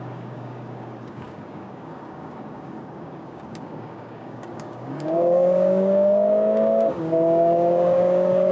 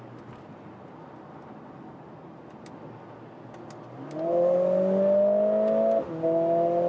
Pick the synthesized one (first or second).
first